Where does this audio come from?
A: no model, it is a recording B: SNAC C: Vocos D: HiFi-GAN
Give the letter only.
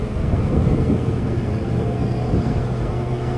B